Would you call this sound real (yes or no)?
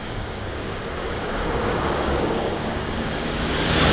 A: no